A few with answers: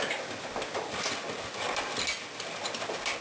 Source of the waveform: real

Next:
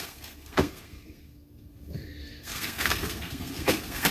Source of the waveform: fake